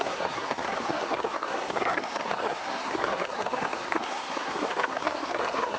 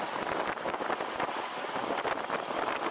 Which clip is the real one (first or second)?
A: second